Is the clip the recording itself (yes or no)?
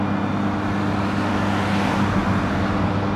yes